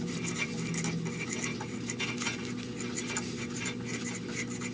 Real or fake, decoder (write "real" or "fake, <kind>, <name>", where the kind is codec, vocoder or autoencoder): real